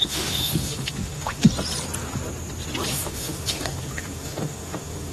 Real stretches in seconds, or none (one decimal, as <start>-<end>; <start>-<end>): 1.4-2.9